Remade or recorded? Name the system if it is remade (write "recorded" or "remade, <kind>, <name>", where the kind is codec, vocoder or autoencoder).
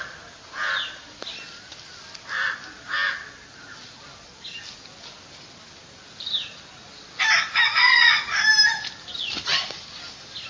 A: recorded